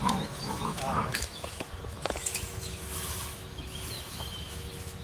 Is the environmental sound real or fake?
fake